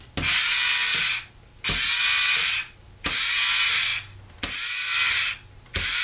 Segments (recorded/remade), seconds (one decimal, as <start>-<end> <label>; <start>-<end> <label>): 0.0-6.0 recorded

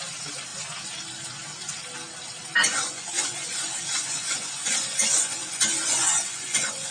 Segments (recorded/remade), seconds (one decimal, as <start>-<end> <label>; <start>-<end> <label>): 0.0-2.7 recorded; 2.7-6.9 remade

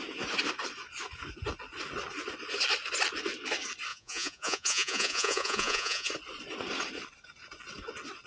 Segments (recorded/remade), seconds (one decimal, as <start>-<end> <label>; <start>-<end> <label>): 0.0-3.9 recorded; 3.9-6.1 remade; 6.1-8.3 recorded